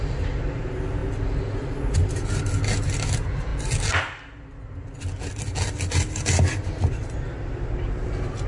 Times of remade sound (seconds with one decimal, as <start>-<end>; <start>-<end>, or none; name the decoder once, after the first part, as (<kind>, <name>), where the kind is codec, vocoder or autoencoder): none